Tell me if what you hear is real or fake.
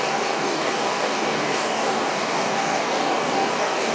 fake